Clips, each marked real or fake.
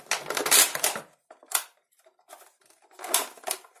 real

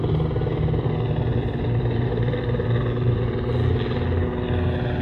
real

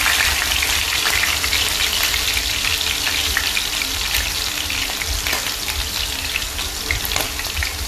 real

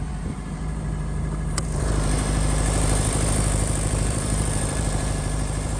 fake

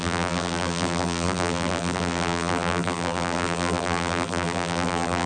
fake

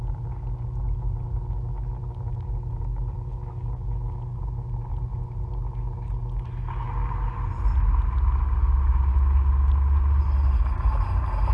real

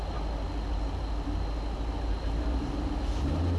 real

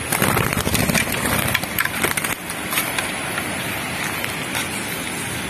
real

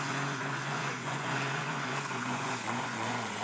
fake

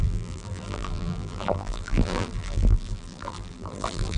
fake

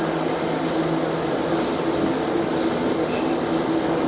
real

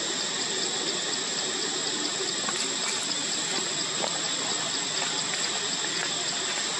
real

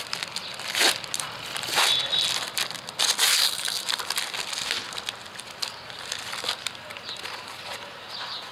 real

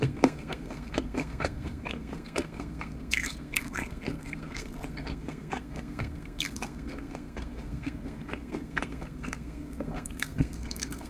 fake